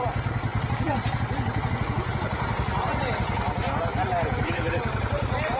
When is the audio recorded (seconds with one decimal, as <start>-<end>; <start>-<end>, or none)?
0.0-0.5; 3.1-3.9; 4.8-5.6